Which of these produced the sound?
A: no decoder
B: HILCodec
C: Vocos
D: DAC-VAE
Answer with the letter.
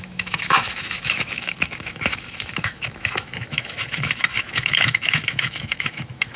D